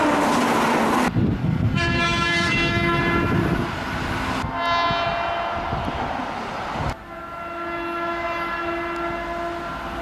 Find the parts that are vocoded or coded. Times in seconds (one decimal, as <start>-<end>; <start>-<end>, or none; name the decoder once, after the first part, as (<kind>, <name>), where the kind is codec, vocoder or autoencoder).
1.4-3.0 (codec, SNAC)